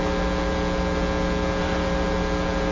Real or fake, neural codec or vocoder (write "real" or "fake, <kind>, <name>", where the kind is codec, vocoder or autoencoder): real